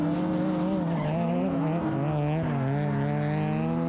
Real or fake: real